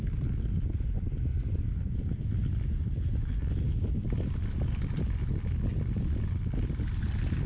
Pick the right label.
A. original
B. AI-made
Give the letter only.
A